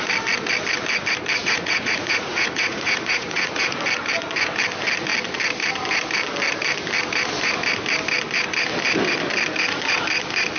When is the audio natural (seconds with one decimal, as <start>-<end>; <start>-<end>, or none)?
0.0-1.4; 3.8-10.6